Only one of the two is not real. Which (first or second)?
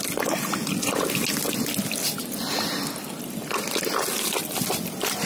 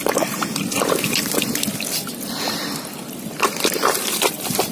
second